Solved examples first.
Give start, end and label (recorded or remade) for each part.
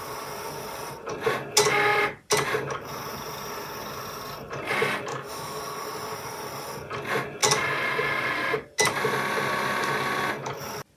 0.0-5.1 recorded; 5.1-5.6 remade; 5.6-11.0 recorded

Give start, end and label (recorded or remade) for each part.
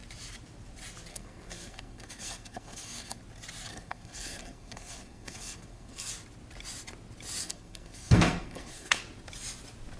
0.0-1.1 recorded; 1.1-3.2 remade; 3.2-3.7 recorded; 3.7-6.1 remade; 6.1-7.4 recorded; 7.4-9.0 remade; 9.0-10.0 recorded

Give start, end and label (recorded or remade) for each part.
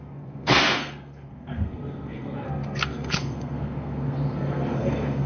0.0-5.3 remade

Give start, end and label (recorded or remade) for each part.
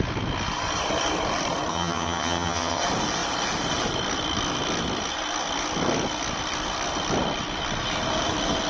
0.0-1.7 recorded; 1.7-2.8 remade; 2.8-8.7 recorded